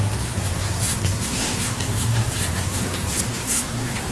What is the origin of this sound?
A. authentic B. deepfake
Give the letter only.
B